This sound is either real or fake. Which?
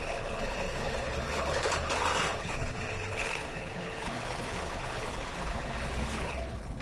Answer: fake